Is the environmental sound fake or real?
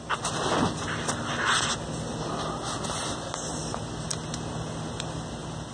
real